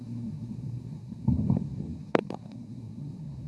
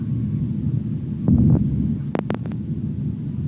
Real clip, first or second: second